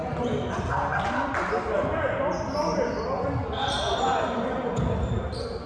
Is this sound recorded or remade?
recorded